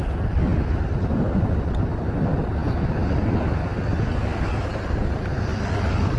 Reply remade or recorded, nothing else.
recorded